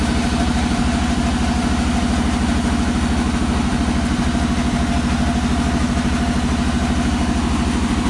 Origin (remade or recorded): recorded